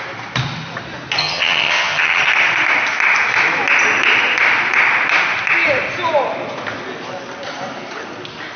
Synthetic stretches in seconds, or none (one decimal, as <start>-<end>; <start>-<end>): 1.2-2.2